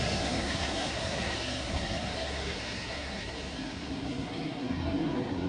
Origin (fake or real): fake